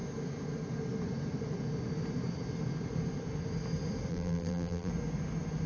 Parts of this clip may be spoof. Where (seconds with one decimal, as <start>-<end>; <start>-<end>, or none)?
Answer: 4.1-4.9